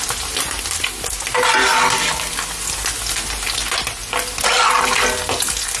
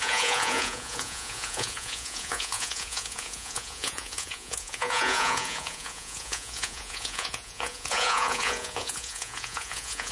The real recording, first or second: first